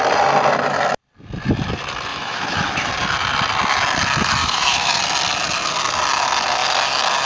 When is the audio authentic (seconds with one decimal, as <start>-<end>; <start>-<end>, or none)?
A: 0.0-2.1; 2.9-4.4; 5.0-7.3